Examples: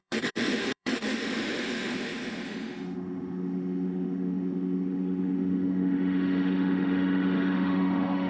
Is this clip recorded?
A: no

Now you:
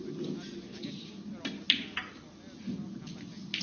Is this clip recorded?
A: yes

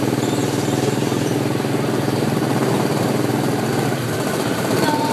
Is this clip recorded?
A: no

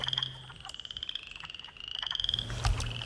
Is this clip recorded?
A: yes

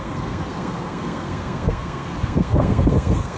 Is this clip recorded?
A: no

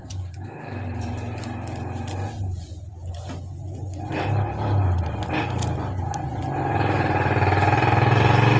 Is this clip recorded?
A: yes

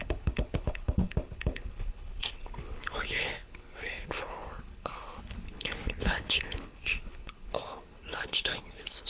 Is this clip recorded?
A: no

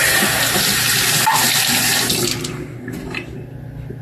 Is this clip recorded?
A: yes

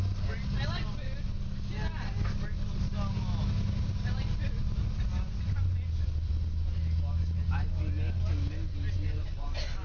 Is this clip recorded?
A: yes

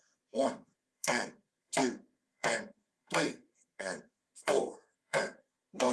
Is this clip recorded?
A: no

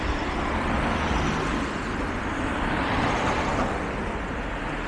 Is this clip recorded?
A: yes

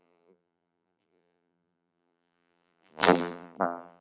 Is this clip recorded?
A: no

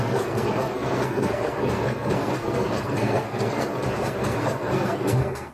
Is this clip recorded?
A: no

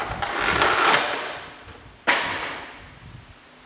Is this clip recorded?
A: yes